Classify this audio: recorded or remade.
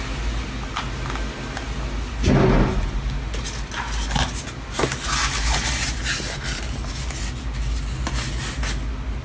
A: recorded